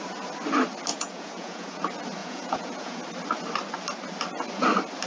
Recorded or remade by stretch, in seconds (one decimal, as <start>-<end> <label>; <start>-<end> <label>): 0.0-0.9 recorded; 0.9-1.8 remade; 1.8-2.2 recorded; 2.2-3.0 remade; 3.0-5.1 recorded